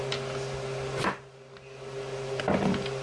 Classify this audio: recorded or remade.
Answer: recorded